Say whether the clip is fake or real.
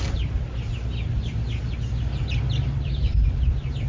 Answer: real